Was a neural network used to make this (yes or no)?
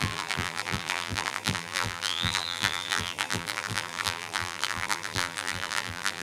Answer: yes